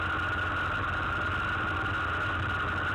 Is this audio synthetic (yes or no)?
no